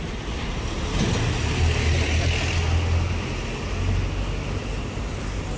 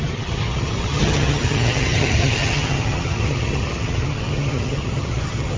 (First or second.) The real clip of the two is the first